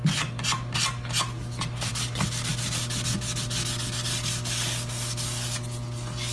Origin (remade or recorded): recorded